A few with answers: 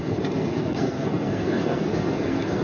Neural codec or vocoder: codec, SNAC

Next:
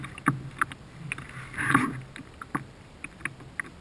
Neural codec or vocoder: none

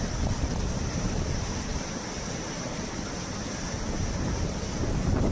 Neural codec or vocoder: none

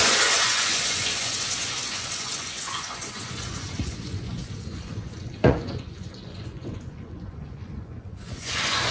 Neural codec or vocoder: vocoder, Vocos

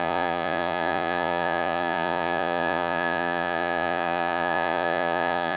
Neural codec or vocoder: vocoder, Vocos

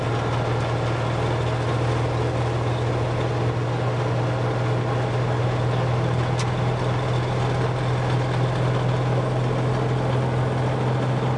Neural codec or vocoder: none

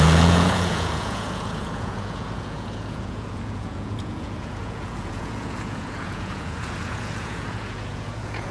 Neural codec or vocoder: vocoder, Vocos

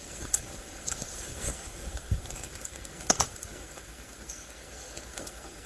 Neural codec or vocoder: codec, SNAC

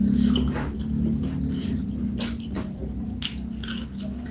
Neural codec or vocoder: none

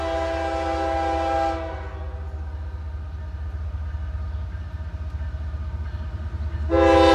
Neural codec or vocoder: none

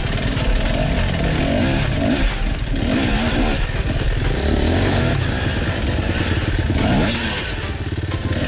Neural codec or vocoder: none